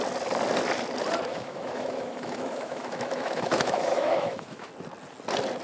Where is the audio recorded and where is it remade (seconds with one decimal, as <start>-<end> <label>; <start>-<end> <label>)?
0.0-1.3 recorded; 1.3-4.7 remade; 4.7-5.6 recorded